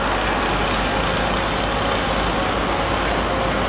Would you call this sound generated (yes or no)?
no